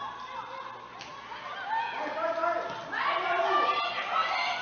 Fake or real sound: real